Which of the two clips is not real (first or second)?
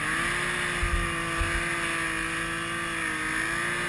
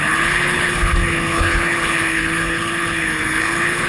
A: second